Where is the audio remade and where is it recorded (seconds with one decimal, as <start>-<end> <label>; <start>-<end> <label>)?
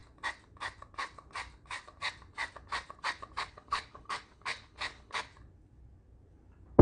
0.0-3.4 recorded; 3.4-5.3 remade; 5.3-6.8 recorded